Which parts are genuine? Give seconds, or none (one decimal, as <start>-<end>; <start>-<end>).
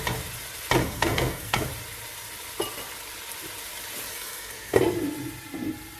0.0-0.8; 1.7-4.1; 4.8-6.0